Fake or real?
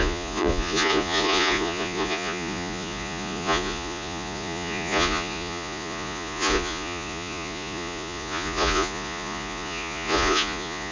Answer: fake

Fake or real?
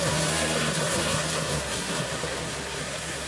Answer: fake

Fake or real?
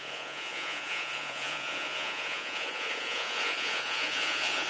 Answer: fake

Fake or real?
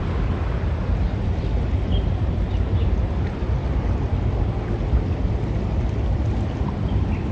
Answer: real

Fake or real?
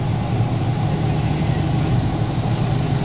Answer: real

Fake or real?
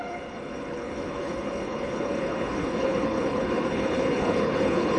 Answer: fake